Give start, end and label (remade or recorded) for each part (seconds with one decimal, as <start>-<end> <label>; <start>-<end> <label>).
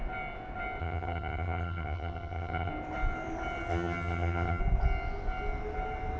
0.0-0.8 recorded; 0.8-2.7 remade; 2.7-3.7 recorded; 3.7-4.6 remade; 4.6-6.2 recorded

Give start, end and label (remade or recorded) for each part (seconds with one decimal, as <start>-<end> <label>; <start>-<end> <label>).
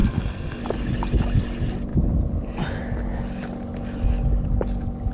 0.0-0.6 remade; 0.6-5.1 recorded